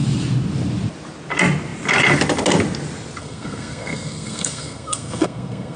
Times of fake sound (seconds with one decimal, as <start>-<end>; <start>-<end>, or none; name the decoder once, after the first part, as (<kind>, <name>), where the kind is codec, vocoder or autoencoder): 3.2-5.8 (codec, SNAC)